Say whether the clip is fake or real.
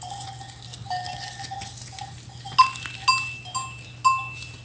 real